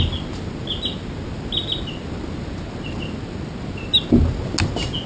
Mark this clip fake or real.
real